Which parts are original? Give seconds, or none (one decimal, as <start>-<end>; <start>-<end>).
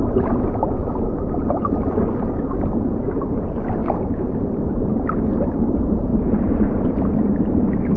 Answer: none